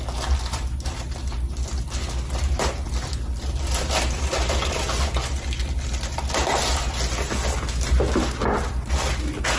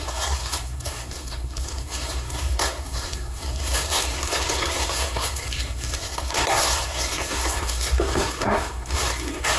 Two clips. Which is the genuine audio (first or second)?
first